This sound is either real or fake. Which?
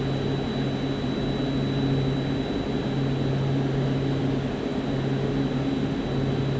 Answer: real